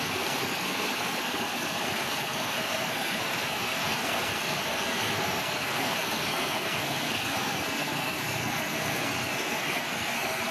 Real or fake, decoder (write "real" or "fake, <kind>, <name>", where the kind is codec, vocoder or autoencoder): fake, codec, SNAC